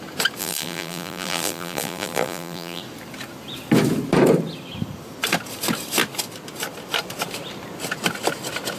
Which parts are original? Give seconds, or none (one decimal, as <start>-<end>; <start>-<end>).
0.0-0.4; 2.8-8.8